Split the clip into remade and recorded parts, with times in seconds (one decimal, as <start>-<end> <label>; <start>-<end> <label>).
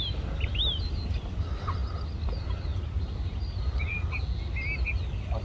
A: 0.0-5.4 recorded